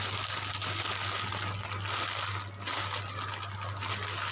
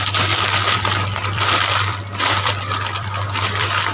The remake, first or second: second